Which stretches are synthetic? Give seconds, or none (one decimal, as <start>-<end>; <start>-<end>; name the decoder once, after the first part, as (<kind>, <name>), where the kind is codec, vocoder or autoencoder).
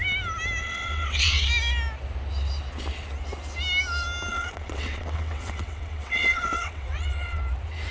0.6-1.5 (vocoder, WaveNeXt); 4.3-7.4